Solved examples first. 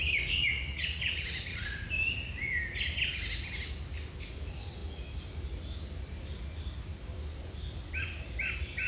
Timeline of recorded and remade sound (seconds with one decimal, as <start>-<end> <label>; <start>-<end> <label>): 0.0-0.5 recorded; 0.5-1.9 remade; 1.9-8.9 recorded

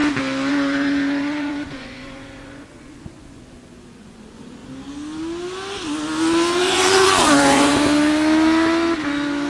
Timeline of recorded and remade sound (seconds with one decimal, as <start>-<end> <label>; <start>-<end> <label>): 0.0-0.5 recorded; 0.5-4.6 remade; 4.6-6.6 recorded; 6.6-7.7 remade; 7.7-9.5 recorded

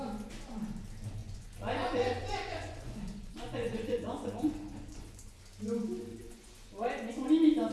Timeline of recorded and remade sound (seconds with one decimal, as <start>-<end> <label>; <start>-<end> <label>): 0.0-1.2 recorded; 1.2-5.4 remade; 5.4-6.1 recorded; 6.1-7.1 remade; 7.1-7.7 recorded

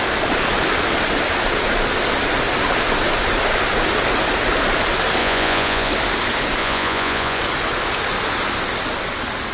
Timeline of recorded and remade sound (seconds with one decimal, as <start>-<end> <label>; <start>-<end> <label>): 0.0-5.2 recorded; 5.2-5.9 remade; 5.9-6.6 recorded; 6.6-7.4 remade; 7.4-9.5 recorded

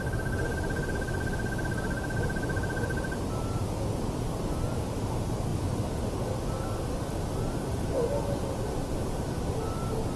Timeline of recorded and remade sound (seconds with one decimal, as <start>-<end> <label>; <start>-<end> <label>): 0.0-10.2 recorded

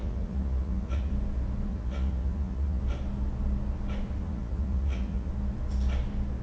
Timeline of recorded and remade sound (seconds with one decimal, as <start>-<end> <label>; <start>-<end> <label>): 0.0-1.1 remade; 1.1-1.7 recorded; 1.7-2.8 remade; 2.8-4.2 recorded; 4.2-5.3 remade; 5.3-6.4 recorded